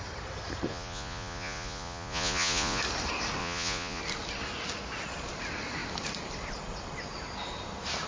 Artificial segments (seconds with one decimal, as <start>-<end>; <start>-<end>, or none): 0.7-2.8; 3.4-4.0